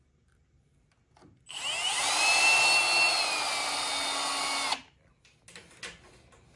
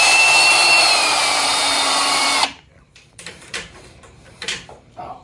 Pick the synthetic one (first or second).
second